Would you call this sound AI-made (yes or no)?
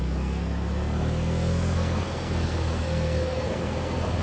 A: yes